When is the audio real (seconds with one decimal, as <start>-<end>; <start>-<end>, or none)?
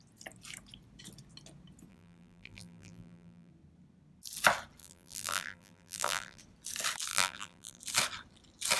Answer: 0.0-1.9; 3.5-4.8; 6.4-7.1; 7.8-8.8